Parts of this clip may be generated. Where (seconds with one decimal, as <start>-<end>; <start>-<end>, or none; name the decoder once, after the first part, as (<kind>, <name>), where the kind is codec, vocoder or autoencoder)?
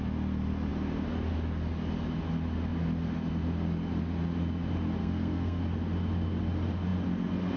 5.0-5.6 (codec, SNAC)